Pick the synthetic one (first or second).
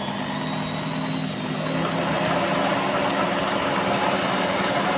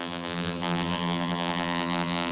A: second